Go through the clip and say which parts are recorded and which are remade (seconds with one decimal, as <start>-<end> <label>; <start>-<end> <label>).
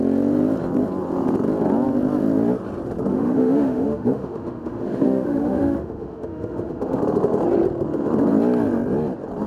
0.0-3.1 recorded; 3.1-7.0 remade; 7.0-9.5 recorded